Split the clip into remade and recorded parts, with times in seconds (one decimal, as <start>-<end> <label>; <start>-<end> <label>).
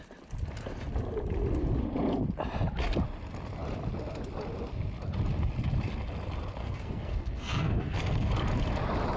0.0-6.6 recorded; 6.6-8.3 remade; 8.3-9.2 recorded